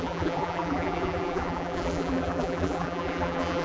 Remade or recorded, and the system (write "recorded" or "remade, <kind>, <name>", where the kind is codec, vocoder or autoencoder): remade, vocoder, BigVGAN v2